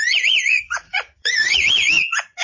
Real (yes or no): no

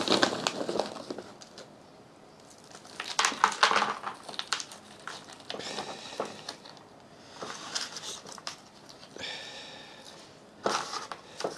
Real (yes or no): yes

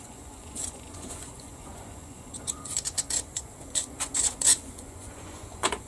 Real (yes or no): no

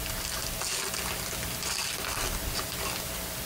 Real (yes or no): yes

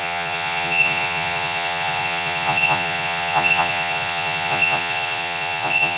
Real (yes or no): no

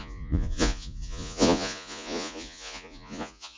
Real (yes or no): no